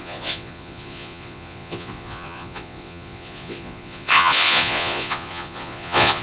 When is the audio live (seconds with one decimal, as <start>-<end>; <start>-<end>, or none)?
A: none